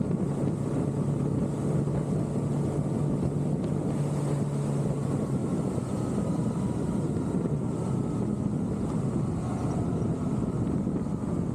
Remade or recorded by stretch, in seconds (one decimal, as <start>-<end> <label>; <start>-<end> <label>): 0.0-5.4 recorded; 5.4-6.5 remade; 6.5-11.5 recorded